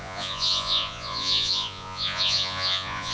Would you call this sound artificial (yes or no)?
yes